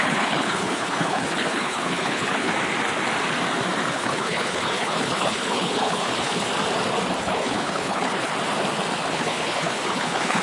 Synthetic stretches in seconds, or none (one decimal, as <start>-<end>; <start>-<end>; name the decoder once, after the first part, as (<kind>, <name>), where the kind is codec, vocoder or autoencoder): 0.0-2.5 (codec, HILCodec); 3.9-6.5; 7.2-8.3; 9.1-10.4